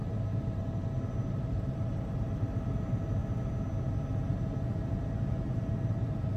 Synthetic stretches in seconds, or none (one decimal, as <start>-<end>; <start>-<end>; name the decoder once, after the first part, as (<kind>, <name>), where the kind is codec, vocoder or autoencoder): 0.0-3.2 (vocoder, BigVGAN v2); 4.2-6.4